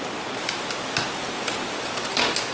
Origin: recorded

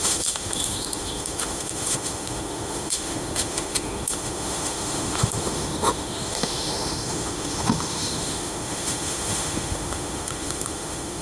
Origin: remade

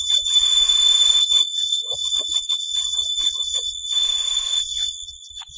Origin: remade